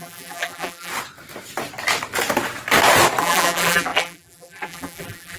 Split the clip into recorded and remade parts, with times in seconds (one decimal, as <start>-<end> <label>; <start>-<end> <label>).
0.0-0.9 remade; 0.9-3.2 recorded; 3.2-5.4 remade